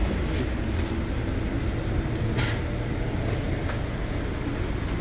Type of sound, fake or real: real